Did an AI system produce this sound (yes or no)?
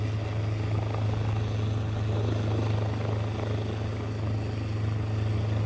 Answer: no